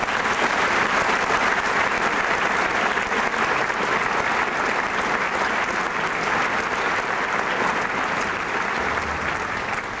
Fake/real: real